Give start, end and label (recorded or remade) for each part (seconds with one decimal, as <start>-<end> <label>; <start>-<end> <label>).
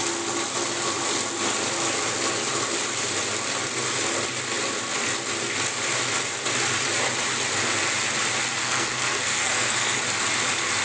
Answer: 0.0-8.6 recorded; 8.6-10.0 remade; 10.0-10.8 recorded